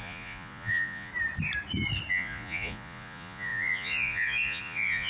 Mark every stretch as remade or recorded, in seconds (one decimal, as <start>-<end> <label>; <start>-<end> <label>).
0.0-1.1 remade; 1.1-2.1 recorded; 2.1-5.1 remade